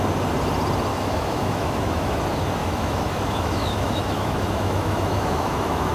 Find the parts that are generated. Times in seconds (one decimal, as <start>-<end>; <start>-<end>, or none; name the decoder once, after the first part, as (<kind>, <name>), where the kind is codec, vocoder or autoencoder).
0.9-2.2 (autoencoder, DAC-VAE); 2.6-5.9